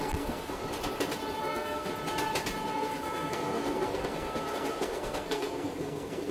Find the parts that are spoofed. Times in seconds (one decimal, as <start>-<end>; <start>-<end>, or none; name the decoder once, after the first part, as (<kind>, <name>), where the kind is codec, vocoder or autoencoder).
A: 0.0-0.6 (codec, SNAC); 1.4-1.9; 2.7-6.3